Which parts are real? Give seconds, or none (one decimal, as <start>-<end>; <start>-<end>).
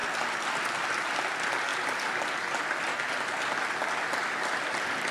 0.0-5.1